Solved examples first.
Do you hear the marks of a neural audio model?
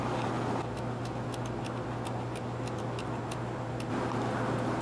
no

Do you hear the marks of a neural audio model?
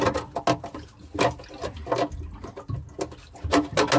no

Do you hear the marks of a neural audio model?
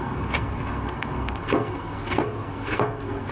yes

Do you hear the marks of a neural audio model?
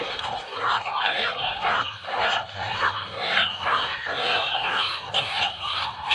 yes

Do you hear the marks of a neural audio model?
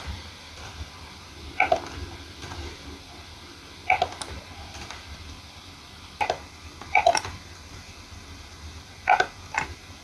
no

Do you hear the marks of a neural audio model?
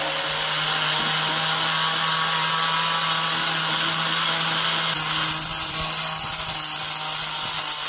no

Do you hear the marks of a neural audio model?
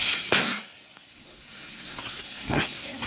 yes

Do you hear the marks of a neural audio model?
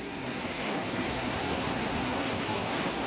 yes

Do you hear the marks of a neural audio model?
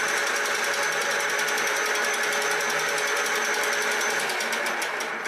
no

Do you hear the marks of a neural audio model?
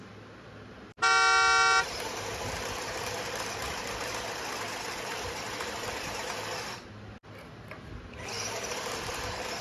no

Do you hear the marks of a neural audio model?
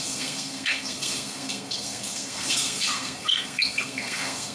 yes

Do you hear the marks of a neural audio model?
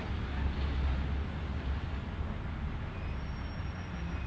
no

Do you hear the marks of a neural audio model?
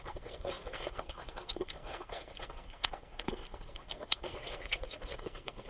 yes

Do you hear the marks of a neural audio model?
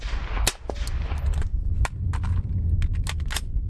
no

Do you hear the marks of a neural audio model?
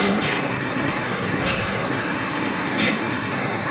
yes